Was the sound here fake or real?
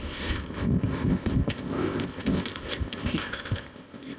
fake